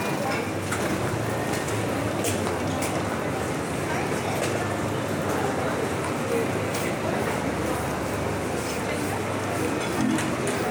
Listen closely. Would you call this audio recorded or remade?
recorded